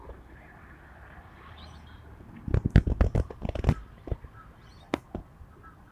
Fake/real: real